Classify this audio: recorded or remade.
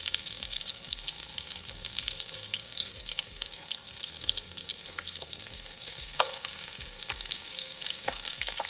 remade